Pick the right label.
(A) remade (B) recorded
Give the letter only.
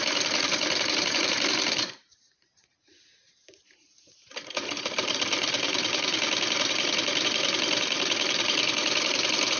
A